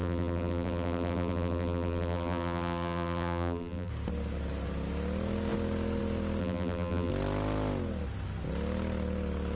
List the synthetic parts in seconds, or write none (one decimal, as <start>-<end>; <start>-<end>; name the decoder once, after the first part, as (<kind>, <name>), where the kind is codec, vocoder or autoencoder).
0.0-3.9 (vocoder, BigVGAN v2); 6.4-7.1